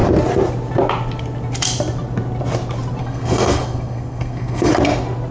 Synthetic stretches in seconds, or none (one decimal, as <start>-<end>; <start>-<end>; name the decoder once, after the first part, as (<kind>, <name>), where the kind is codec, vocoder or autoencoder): 3.0-4.7 (codec, SNAC)